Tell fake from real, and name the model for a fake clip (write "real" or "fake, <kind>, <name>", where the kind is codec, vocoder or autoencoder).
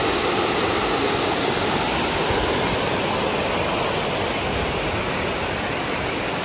real